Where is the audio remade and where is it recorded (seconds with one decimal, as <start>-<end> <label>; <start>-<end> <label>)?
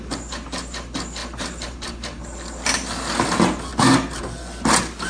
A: 0.0-1.2 recorded; 1.2-2.2 remade; 2.2-5.1 recorded